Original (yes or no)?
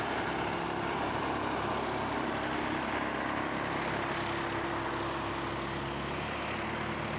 yes